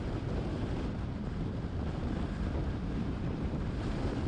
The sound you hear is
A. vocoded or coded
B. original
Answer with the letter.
A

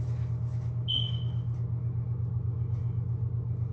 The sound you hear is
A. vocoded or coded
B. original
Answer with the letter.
B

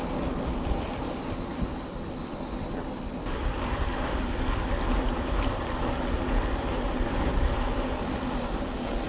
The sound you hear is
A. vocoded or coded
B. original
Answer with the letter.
B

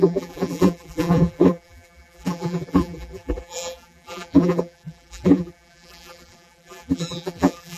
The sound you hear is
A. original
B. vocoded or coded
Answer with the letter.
B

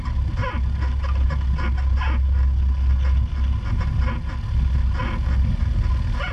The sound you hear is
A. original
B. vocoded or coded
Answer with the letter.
A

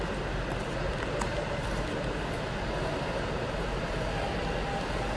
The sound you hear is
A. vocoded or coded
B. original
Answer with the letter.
B